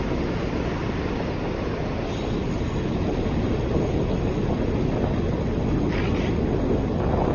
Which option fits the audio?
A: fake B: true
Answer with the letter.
B